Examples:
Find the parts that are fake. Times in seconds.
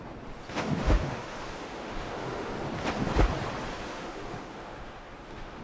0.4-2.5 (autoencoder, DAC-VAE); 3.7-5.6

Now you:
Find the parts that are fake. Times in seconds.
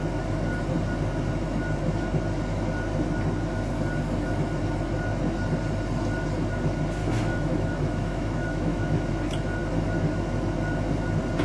7.0-9.1 (autoencoder, DAC-VAE)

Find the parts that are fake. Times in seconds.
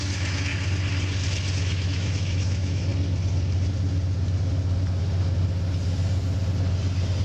0.0-0.5 (autoencoder, DAC-VAE); 1.5-2.9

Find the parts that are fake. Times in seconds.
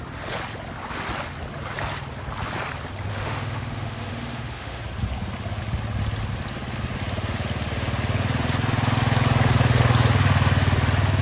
3.1-4.8 (autoencoder, DAC-VAE)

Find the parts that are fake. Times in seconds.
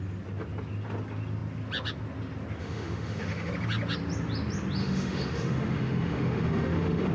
2.6-3.5 (autoencoder, DAC-VAE); 4.8-7.1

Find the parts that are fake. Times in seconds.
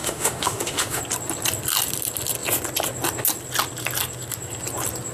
0.0-1.0 (autoencoder, DAC-VAE)